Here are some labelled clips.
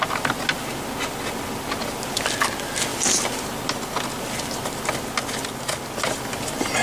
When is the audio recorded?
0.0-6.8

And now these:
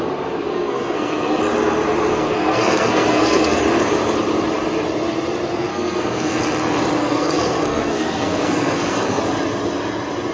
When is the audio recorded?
0.0-0.5; 1.4-2.1; 3.6-5.7; 6.4-7.0; 9.2-10.3

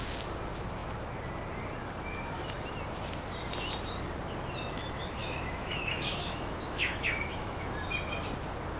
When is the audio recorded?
0.0-5.2; 7.7-8.8

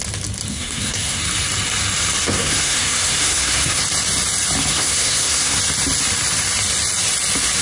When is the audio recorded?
0.0-0.5; 1.2-2.2; 3.8-4.7; 5.6-7.6